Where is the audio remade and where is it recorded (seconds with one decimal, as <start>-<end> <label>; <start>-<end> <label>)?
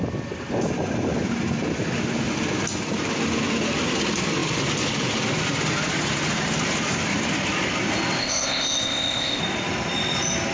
0.0-8.2 recorded; 8.2-9.4 remade; 9.4-10.5 recorded